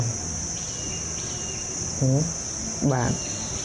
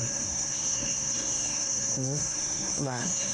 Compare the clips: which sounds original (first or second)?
first